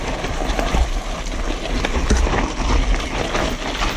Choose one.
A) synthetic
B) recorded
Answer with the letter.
B